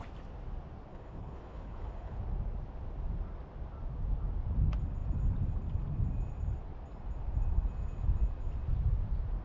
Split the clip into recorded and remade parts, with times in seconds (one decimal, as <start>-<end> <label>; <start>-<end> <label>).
0.0-0.9 recorded; 0.9-2.2 remade; 2.2-9.4 recorded